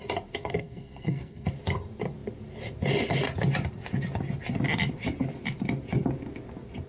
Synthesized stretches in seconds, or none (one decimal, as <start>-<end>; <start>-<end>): 0.4-1.5